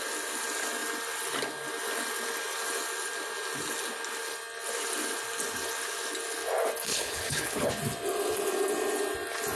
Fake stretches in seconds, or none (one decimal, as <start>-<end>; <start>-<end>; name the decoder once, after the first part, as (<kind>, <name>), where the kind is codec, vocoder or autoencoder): 6.9-7.7 (codec, HILCodec)